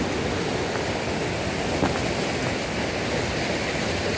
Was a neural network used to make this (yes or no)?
no